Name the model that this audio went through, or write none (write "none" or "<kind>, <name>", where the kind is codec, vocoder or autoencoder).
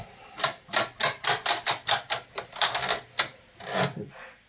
none